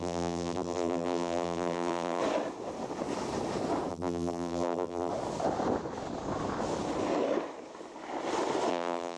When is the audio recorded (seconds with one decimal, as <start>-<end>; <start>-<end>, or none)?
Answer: 2.2-3.9; 5.1-8.7